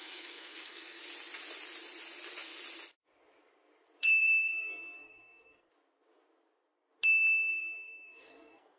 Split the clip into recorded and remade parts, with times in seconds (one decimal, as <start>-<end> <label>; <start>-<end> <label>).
0.0-1.0 remade; 1.0-4.0 recorded; 4.0-5.7 remade; 5.7-7.5 recorded; 7.5-8.8 remade